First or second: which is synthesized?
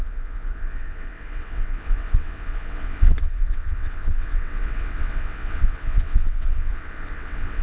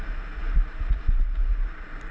first